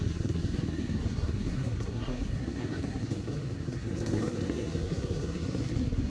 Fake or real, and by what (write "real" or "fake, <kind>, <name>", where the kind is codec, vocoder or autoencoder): fake, codec, SNAC